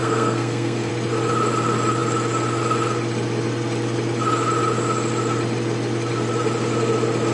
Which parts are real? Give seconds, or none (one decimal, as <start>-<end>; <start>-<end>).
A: 0.9-7.3